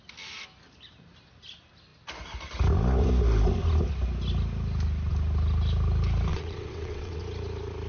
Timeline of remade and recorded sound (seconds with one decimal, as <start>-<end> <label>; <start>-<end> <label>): 0.0-6.3 recorded; 6.3-7.2 remade; 7.2-7.9 recorded